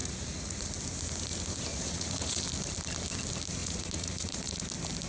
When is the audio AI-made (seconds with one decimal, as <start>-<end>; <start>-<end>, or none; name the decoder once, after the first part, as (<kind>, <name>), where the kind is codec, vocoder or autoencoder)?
0.0-0.7 (vocoder, Vocos); 1.7-2.4; 3.6-4.6